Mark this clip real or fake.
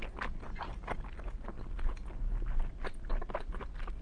real